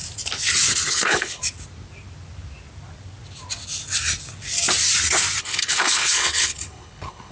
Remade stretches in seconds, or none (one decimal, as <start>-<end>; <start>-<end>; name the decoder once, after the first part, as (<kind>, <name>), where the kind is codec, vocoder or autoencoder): 0.9-1.4 (codec, HILCodec); 5.4-7.3

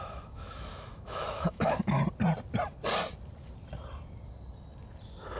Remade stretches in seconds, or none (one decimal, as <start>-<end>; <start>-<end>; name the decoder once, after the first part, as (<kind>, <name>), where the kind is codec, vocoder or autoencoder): 0.0-2.0 (autoencoder, DAC-VAE)

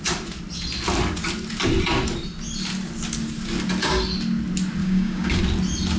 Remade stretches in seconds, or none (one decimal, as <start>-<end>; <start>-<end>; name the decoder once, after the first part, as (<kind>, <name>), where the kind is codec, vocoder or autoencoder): 4.8-5.4 (codec, DAC)

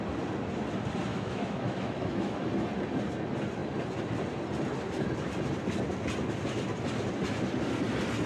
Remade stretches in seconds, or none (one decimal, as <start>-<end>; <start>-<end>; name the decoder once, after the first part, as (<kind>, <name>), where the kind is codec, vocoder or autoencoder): 1.1-2.5 (autoencoder, DAC-VAE)

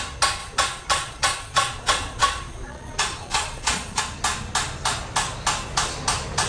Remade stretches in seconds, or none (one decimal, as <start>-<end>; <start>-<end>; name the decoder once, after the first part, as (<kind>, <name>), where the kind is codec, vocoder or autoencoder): 0.4-4.0 (vocoder, Vocos)

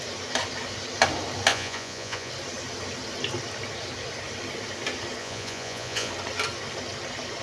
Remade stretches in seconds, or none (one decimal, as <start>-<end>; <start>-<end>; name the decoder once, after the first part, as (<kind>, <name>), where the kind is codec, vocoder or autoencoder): 1.5-2.3 (vocoder, Vocos); 5.2-6.1

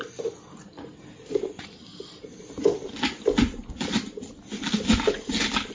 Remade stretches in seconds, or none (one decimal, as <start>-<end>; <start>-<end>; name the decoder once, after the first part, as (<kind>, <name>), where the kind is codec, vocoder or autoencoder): none